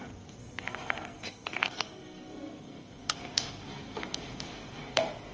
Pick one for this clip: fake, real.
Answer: fake